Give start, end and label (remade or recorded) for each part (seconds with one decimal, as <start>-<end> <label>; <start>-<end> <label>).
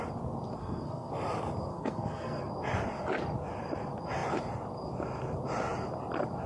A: 0.0-0.6 recorded; 0.6-1.1 remade; 1.1-1.7 recorded; 1.7-2.4 remade; 2.4-6.5 recorded